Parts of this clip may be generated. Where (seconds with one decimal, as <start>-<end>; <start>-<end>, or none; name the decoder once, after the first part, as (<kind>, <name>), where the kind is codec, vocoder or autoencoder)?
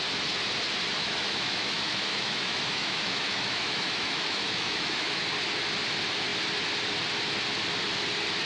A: 1.0-5.2 (autoencoder, DAC-VAE)